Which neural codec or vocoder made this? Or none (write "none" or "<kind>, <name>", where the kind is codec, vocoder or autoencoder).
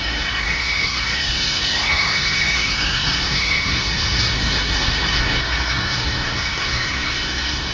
codec, SNAC